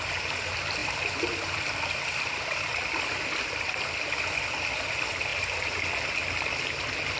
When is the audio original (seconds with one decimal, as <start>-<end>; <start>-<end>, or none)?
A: 0.0-7.2